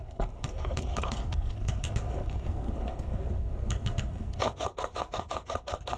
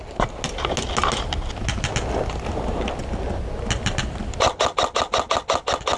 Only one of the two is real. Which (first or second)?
second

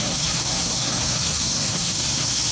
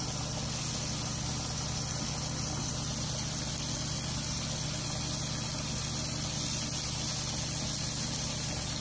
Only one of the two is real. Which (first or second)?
second